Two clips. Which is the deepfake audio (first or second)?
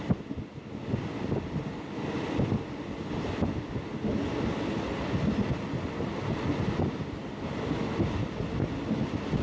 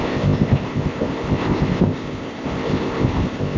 second